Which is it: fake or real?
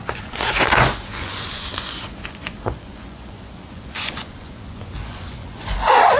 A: fake